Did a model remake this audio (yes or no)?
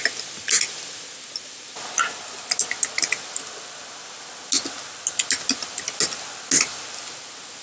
no